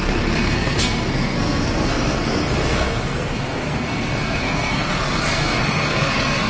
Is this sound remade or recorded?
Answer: remade